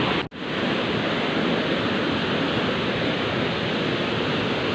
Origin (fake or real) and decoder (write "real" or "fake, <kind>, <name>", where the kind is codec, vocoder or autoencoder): real